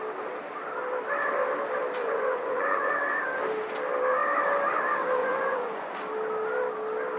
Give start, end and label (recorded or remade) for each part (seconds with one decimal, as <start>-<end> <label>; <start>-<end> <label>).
0.0-2.0 recorded; 2.0-2.9 remade; 2.9-5.2 recorded; 5.2-6.0 remade; 6.0-7.2 recorded